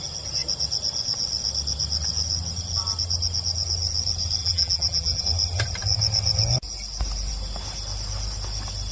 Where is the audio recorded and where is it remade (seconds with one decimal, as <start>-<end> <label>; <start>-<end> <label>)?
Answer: 0.0-4.4 recorded; 4.4-5.2 remade; 5.2-8.9 recorded